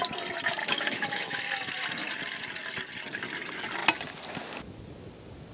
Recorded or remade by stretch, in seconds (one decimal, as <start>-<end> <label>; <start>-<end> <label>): 0.0-0.6 recorded; 0.6-1.4 remade; 1.4-5.5 recorded